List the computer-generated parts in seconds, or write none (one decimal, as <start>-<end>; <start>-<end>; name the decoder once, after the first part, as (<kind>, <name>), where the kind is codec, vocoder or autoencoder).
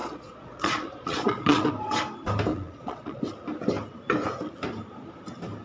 0.0-1.7 (vocoder, Vocos); 2.5-3.2